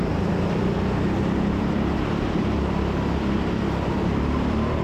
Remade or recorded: remade